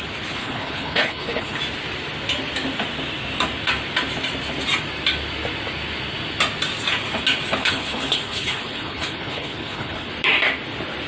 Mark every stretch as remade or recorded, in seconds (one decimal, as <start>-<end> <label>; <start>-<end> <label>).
0.0-0.4 recorded; 0.4-1.6 remade; 1.6-7.6 recorded; 7.6-10.1 remade; 10.1-11.1 recorded